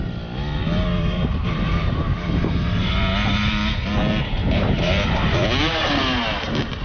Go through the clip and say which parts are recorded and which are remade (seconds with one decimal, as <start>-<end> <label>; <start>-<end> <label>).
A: 0.0-0.9 recorded; 0.9-2.9 remade; 2.9-4.4 recorded; 4.4-4.9 remade; 4.9-6.8 recorded

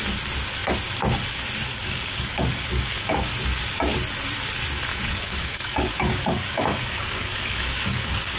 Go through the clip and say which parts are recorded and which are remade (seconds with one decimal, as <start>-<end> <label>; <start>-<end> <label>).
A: 0.0-1.7 recorded; 1.7-3.3 remade; 3.3-4.9 recorded; 4.9-8.4 remade